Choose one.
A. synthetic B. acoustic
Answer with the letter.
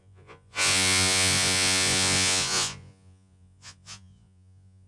A